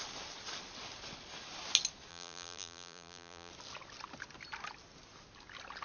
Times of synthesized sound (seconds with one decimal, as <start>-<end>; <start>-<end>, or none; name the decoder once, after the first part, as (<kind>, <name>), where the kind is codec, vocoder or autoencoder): 2.1-3.5 (vocoder, BigVGAN v2)